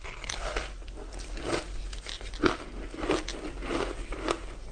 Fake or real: real